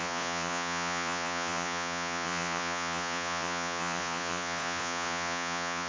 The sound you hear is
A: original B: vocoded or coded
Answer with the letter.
B